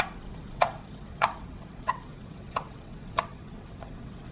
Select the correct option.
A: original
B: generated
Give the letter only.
B